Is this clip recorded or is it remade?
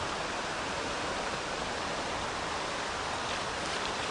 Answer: recorded